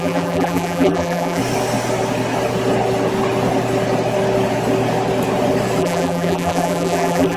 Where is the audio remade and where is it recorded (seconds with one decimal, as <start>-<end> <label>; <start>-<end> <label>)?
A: 0.0-1.4 remade; 1.4-5.8 recorded; 5.8-7.4 remade